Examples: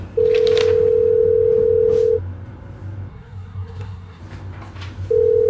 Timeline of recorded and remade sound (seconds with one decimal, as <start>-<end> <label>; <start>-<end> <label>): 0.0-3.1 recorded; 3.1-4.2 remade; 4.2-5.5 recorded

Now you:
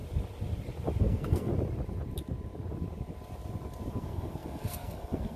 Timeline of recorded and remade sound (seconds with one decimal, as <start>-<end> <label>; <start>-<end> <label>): 0.0-1.0 recorded; 1.0-1.5 remade; 1.5-3.9 recorded; 3.9-5.4 remade

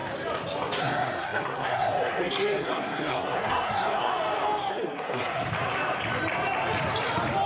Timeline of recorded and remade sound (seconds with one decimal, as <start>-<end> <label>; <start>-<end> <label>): 0.0-0.8 recorded; 0.8-4.1 remade; 4.1-4.7 recorded; 4.7-5.4 remade; 5.4-7.5 recorded